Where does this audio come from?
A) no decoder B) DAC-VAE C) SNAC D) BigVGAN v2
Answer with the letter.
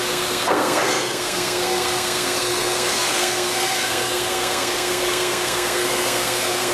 C